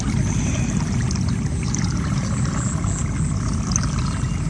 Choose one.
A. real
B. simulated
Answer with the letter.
A